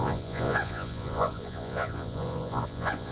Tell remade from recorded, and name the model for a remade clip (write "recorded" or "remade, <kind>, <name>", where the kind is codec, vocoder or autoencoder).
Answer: remade, vocoder, Vocos